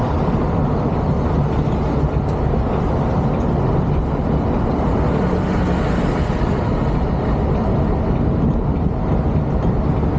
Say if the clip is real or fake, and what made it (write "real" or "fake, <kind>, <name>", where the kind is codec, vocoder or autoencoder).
real